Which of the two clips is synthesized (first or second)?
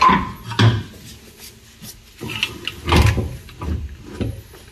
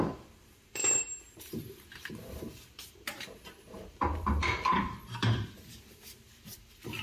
second